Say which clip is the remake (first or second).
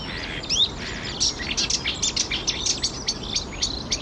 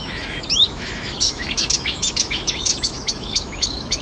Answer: second